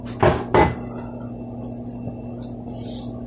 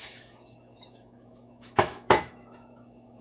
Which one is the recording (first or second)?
first